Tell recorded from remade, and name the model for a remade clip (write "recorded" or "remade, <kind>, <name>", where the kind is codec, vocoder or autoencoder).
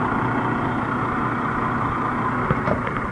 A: recorded